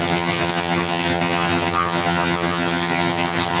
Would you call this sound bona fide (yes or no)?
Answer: no